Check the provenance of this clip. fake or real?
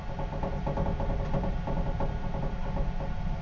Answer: real